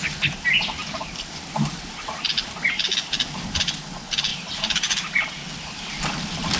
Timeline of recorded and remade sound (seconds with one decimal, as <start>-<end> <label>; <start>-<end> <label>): 0.0-0.8 recorded; 0.8-1.3 remade; 1.3-4.3 recorded; 4.3-6.0 remade; 6.0-6.6 recorded